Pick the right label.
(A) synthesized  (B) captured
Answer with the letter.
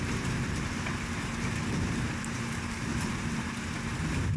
A